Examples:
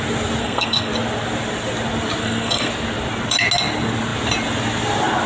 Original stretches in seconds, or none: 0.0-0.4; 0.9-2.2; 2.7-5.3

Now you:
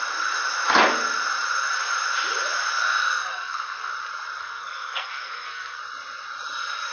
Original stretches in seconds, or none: 0.0-3.2; 3.9-4.4; 5.8-6.9

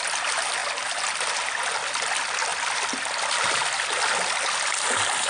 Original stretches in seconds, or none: 0.0-5.3

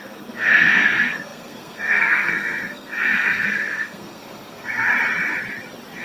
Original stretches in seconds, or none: 4.9-6.0

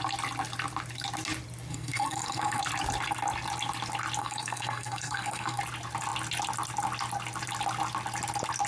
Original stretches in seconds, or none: 0.0-1.7; 2.6-4.2; 5.6-8.7

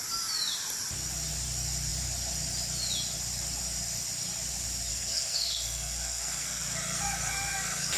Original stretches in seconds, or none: 0.0-4.9

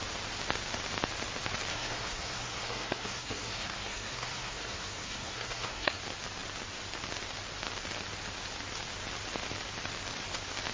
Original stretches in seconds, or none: 0.0-1.7; 6.0-10.7